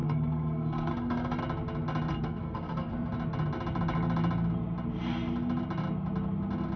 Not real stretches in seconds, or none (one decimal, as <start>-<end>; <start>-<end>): 0.0-1.4; 2.1-2.9